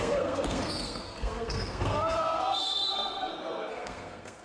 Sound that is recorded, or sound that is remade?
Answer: remade